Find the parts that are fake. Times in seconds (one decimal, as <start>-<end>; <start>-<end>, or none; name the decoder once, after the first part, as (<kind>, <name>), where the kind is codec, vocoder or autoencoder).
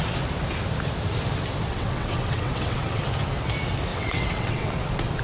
1.7-3.0 (vocoder, WaveNeXt); 3.9-4.8